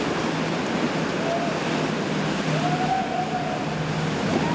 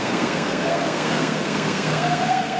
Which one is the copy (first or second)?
second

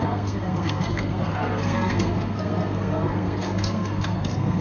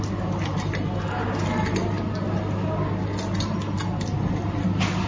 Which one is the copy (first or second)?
first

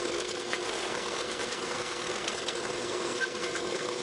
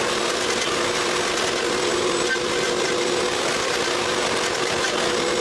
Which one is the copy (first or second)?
first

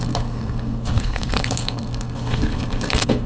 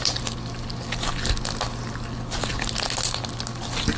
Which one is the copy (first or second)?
first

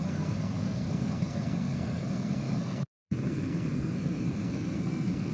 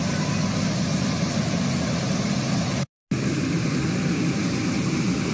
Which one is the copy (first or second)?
first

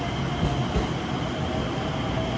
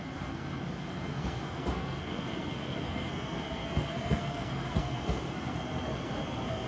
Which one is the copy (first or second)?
second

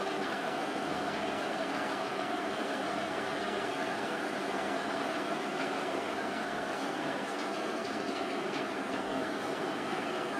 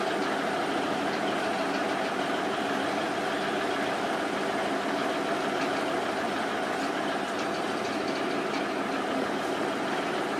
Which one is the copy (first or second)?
first